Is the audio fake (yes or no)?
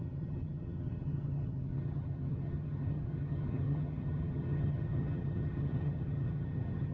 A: yes